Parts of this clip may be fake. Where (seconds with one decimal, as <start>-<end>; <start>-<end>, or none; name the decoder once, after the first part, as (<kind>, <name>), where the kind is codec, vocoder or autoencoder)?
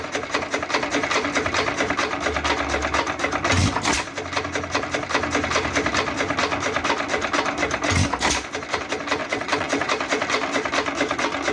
9.2-9.9 (vocoder, WaveNeXt)